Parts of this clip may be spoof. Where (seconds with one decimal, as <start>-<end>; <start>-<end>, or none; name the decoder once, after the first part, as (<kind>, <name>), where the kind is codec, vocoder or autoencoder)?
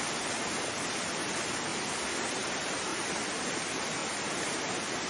0.0-1.7 (vocoder, BigVGAN v2); 2.2-2.9; 3.4-4.0; 4.6-5.1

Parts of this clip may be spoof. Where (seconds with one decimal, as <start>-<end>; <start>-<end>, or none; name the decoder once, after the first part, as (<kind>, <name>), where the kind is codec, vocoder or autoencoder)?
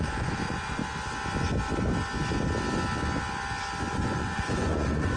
0.0-0.8 (vocoder, Vocos); 3.9-5.2